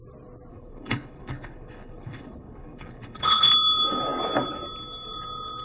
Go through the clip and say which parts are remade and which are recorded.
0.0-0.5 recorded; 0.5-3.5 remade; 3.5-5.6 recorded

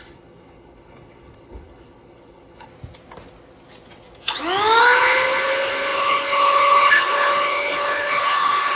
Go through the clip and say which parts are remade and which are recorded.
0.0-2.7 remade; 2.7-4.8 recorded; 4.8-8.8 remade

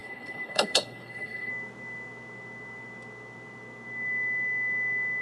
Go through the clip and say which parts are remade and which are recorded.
0.0-1.5 remade; 1.5-5.2 recorded

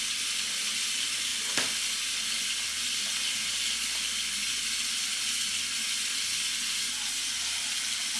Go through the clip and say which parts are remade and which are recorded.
0.0-8.2 recorded

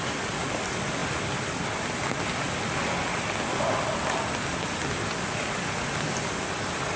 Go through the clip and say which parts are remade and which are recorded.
0.0-7.0 recorded

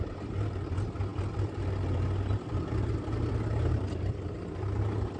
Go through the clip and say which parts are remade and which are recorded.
0.0-5.2 recorded